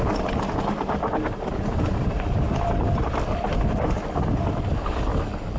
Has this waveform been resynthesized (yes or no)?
no